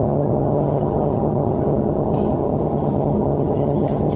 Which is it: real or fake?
fake